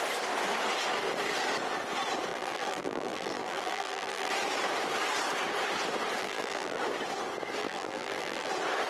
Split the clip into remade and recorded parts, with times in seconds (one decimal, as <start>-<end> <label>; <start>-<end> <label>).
0.0-2.3 recorded; 2.3-4.3 remade; 4.3-6.2 recorded; 6.2-6.8 remade; 6.8-7.6 recorded; 7.6-8.5 remade; 8.5-8.9 recorded